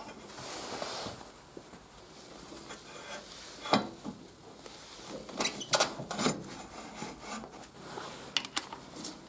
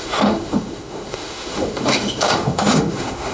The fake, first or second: second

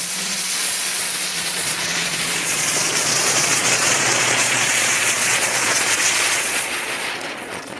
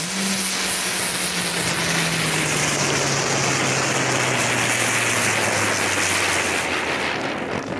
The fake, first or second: first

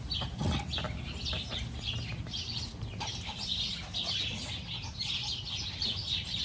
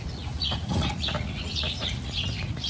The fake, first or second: second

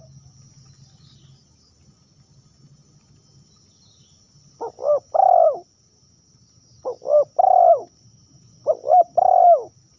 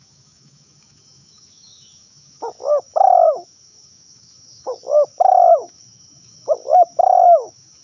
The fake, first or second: second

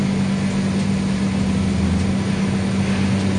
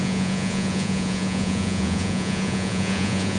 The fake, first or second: second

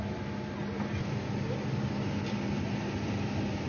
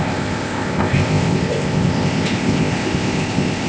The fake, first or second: second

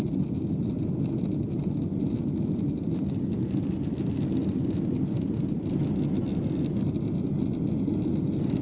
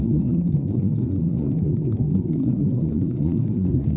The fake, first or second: second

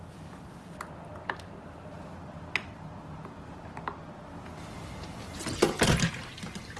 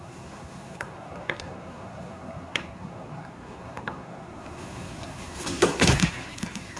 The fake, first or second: second